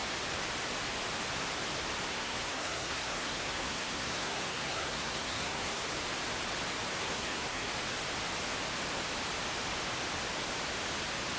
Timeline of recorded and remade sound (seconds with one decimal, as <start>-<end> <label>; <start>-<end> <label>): 0.0-2.1 recorded; 2.1-5.8 remade; 5.8-7.0 recorded; 7.0-7.7 remade; 7.7-11.4 recorded